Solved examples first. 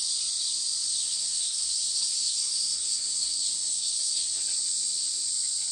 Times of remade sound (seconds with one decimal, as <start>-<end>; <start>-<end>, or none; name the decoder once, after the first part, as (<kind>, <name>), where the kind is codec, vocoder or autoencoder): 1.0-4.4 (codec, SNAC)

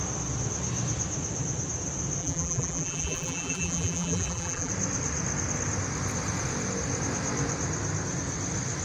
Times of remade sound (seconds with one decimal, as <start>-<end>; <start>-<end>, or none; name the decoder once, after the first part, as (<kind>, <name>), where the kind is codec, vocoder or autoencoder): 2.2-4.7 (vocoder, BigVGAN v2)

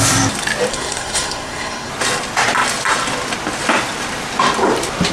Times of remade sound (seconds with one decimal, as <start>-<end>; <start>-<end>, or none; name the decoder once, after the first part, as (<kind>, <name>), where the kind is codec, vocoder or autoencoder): 0.7-1.9 (codec, SNAC)

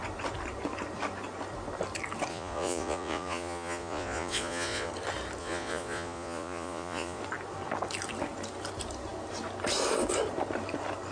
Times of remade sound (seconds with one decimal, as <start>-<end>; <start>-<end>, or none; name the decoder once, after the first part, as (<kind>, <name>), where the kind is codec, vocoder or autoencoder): 2.3-4.9 (vocoder, Vocos); 5.4-7.2

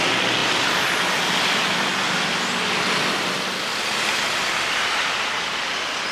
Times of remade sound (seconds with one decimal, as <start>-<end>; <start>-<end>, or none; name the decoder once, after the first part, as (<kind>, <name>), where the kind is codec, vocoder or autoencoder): none

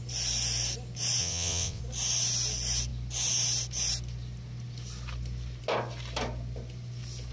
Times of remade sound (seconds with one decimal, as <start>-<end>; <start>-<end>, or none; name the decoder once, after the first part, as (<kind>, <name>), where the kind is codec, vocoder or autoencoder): 1.2-1.8 (vocoder, WaveNeXt)

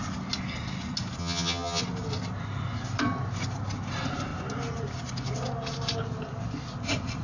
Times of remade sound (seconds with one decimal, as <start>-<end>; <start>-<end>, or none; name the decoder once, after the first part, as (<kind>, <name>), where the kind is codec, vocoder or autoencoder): 1.2-1.8 (vocoder, HiFi-GAN)